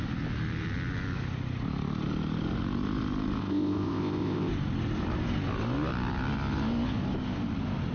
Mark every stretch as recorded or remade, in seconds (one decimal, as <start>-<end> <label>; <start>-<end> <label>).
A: 0.0-3.4 recorded; 3.4-4.5 remade; 4.5-7.9 recorded